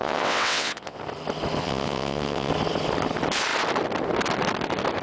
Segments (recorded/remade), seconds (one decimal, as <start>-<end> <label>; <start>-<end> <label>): 0.0-1.0 remade; 1.0-1.6 recorded; 1.6-2.5 remade; 2.5-5.0 recorded